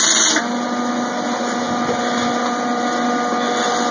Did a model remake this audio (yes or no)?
no